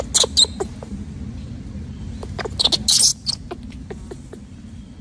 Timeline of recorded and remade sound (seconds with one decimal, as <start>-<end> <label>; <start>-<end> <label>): 0.0-5.0 recorded